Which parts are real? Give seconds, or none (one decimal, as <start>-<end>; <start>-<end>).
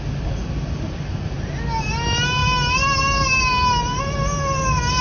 0.0-5.0